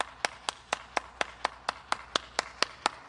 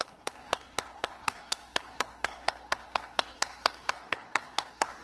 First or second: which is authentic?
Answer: first